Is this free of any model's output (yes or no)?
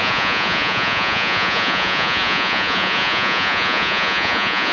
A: no